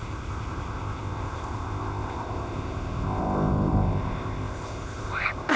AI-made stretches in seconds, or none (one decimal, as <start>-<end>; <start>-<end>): 0.0-5.6